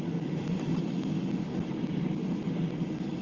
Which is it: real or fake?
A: real